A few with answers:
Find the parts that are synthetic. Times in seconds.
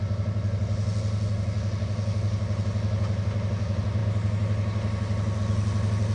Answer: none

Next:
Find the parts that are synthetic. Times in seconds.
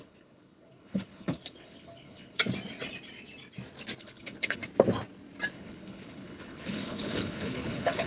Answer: 0.0-2.4 (codec, HILCodec); 4.0-4.6; 5.5-8.1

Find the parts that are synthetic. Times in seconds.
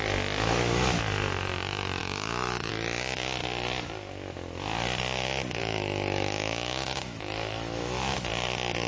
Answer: 2.0-2.7 (autoencoder, DAC-VAE); 5.6-8.3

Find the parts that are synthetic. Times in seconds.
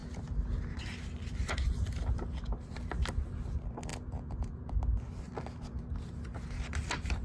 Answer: 3.9-4.6 (vocoder, Vocos)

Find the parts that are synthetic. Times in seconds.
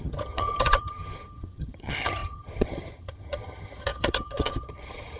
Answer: 0.0-5.2 (vocoder, HiFi-GAN)